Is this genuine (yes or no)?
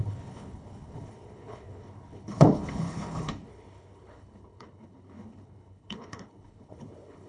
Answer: no